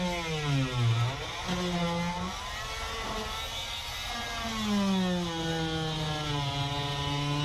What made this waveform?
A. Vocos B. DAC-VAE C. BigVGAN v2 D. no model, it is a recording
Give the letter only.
D